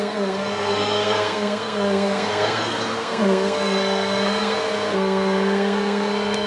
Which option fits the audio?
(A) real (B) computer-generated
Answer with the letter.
B